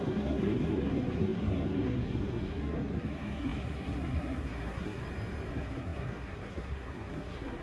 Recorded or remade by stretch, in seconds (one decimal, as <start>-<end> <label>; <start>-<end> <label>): 0.0-5.0 remade; 5.0-5.5 recorded; 5.5-7.6 remade